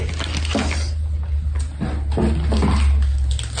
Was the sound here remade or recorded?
recorded